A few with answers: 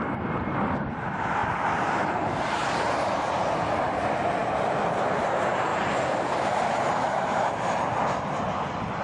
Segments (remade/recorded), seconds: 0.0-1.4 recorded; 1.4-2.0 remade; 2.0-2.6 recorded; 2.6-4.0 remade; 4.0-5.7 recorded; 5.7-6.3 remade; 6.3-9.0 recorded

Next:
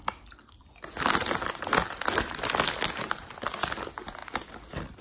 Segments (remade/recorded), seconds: 0.0-0.7 remade; 0.7-4.2 recorded; 4.2-5.0 remade

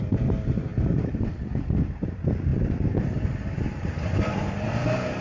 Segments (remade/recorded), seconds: 0.0-2.5 remade; 2.5-3.3 recorded; 3.3-5.2 remade

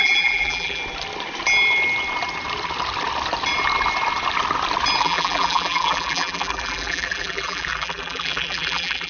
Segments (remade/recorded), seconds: 0.0-0.8 remade; 0.8-5.0 recorded; 5.0-9.1 remade

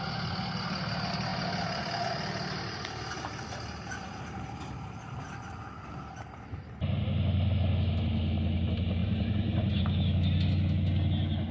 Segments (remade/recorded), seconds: 0.0-9.0 recorded; 9.0-9.8 remade; 9.8-11.5 recorded

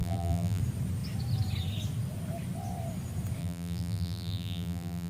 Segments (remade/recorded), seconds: 0.0-0.6 remade; 0.6-3.4 recorded; 3.4-5.1 remade

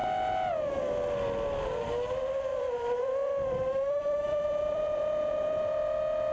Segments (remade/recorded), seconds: 0.0-2.5 recorded; 2.5-5.8 remade; 5.8-6.3 recorded